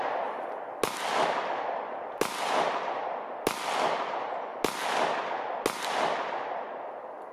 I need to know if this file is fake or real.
real